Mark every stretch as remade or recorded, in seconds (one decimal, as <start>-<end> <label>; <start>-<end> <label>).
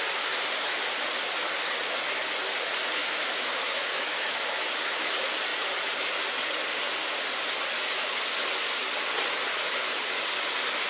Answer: 0.0-3.0 recorded; 3.0-5.1 remade; 5.1-10.9 recorded